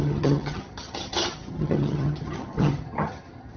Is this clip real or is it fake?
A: fake